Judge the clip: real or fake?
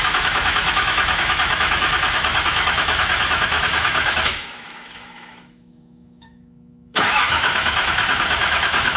fake